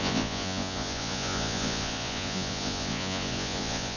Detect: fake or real fake